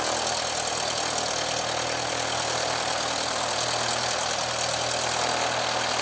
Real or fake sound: real